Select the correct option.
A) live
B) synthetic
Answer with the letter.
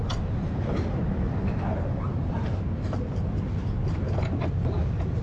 A